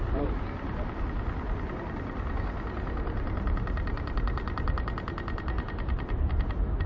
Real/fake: real